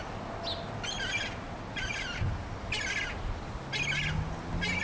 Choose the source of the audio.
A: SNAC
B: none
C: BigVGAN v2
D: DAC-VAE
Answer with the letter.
B